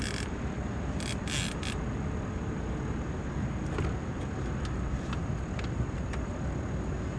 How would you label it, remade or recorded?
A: recorded